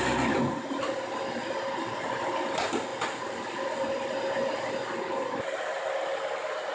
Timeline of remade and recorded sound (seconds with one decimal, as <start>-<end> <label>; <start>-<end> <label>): 0.0-6.7 recorded